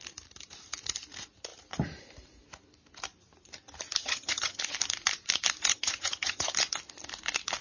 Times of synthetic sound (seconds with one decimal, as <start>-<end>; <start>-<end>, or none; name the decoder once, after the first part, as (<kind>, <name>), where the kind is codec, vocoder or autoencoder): 4.0-4.6 (vocoder, HiFi-GAN); 5.7-6.5